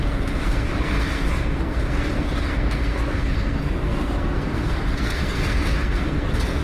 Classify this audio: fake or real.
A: fake